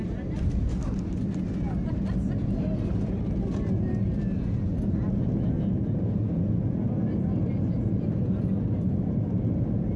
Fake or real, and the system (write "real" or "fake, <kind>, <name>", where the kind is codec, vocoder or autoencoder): real